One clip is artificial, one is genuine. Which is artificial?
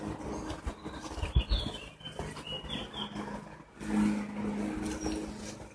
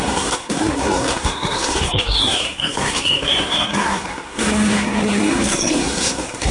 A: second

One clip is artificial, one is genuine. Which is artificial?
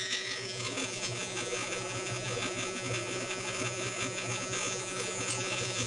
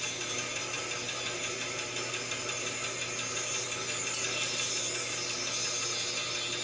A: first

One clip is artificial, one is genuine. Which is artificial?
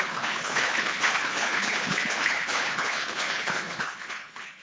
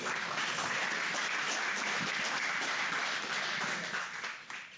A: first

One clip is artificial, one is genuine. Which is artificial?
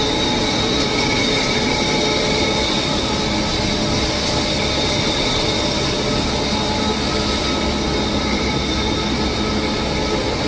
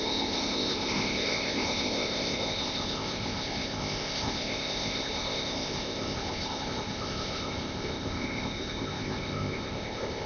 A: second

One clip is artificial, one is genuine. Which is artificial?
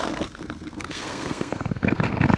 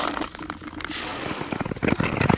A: first